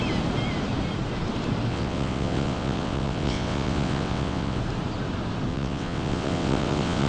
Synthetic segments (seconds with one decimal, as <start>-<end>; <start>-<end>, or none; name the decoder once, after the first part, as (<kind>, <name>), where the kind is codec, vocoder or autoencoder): 1.7-4.6 (vocoder, WaveNeXt); 5.5-7.1